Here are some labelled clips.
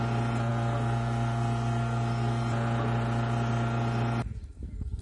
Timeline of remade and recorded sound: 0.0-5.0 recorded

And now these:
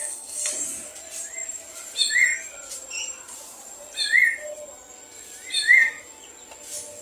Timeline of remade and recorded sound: 0.0-0.5 remade; 0.5-7.0 recorded